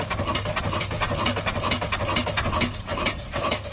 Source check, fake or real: real